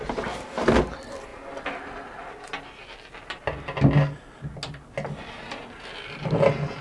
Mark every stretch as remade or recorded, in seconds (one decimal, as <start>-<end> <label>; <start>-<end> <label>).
0.0-6.8 recorded